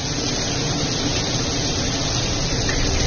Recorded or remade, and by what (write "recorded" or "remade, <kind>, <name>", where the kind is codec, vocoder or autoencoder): recorded